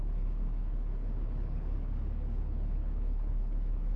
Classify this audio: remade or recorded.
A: remade